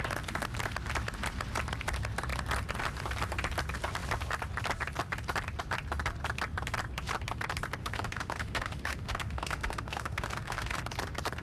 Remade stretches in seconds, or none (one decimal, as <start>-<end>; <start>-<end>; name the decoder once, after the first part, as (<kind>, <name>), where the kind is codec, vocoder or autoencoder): 7.8-10.8 (autoencoder, DAC-VAE)